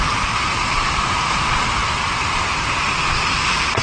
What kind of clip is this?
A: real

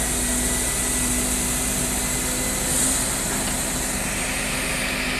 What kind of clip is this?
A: real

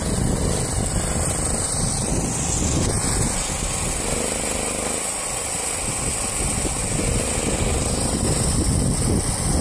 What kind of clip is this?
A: real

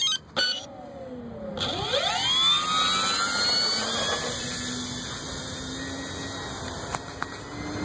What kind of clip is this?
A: real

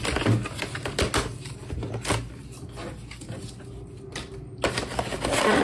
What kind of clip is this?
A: real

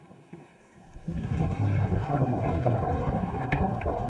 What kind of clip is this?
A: fake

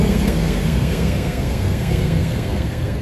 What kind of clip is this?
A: fake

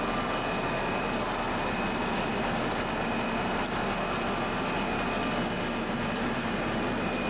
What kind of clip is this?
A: real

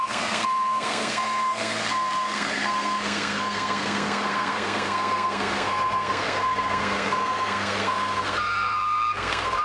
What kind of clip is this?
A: fake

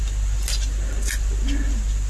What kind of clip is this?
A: real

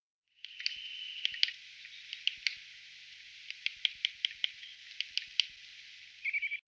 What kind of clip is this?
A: real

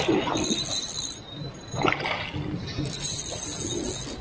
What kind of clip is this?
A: real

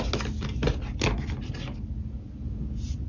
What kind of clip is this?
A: real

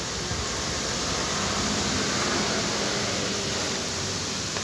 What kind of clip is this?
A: real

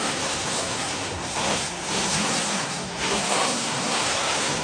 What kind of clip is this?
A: fake